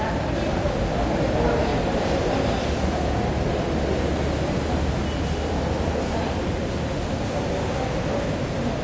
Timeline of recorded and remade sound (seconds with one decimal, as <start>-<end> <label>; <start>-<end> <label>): 0.0-8.8 recorded